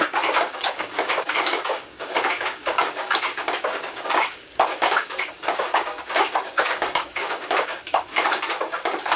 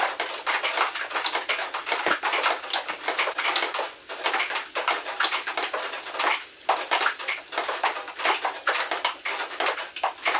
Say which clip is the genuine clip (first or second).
second